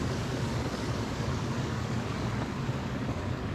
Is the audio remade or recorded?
remade